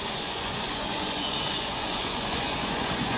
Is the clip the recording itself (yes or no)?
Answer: no